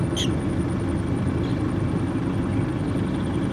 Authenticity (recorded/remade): recorded